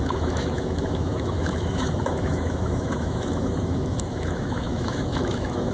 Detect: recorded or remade remade